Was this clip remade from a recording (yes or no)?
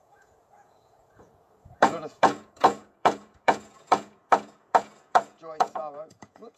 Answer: yes